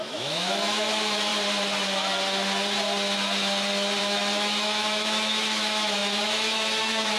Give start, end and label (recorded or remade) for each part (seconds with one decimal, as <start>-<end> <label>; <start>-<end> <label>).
0.0-1.3 remade; 1.3-4.0 recorded; 4.0-7.2 remade